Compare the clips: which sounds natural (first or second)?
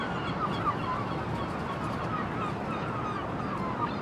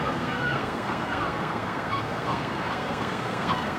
first